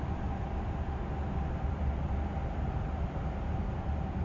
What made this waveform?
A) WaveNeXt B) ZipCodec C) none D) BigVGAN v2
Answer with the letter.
D